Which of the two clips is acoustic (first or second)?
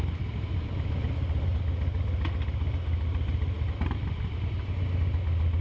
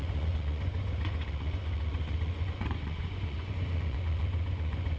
first